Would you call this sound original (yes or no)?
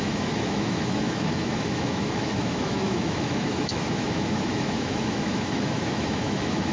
no